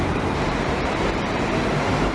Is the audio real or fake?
fake